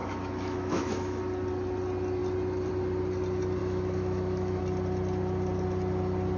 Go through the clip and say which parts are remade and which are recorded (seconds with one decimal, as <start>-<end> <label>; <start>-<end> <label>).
0.0-1.2 remade; 1.2-3.6 recorded; 3.6-4.6 remade; 4.6-6.4 recorded